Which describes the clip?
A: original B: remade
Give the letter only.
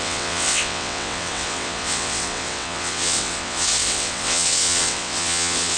B